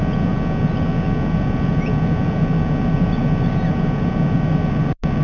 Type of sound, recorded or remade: recorded